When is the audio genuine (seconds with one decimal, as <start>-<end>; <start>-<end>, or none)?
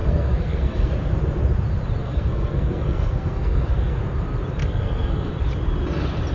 0.9-2.0; 4.0-4.6; 5.3-6.3